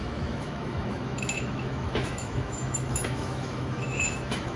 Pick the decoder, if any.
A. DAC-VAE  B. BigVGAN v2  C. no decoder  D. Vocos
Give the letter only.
A